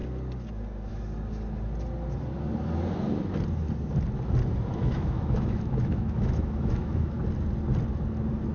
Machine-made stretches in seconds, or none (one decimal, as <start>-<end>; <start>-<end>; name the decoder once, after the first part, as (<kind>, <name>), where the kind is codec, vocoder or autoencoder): 4.7-7.2 (autoencoder, DAC-VAE)